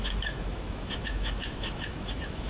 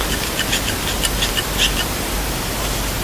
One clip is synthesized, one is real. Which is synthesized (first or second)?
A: first